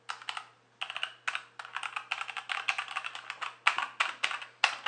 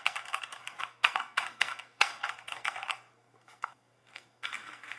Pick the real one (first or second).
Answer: first